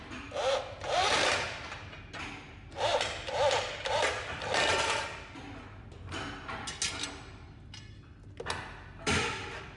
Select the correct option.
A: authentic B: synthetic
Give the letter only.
A